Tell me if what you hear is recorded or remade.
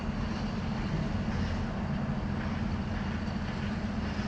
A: recorded